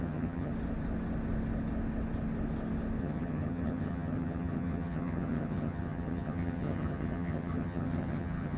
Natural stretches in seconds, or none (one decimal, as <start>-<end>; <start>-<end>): 0.5-3.0